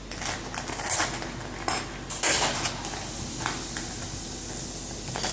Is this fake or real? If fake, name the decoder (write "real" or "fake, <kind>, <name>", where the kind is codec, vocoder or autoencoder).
real